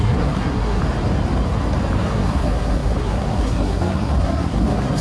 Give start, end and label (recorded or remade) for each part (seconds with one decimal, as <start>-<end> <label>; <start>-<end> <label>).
0.0-0.8 remade; 0.8-2.0 recorded; 2.0-5.0 remade